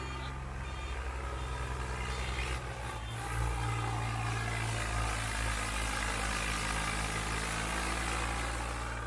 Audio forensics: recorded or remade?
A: recorded